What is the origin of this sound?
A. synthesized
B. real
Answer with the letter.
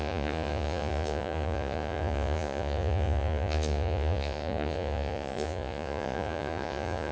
A